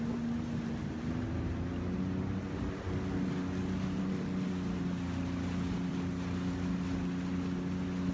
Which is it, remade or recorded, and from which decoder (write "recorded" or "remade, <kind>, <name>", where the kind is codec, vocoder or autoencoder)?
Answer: recorded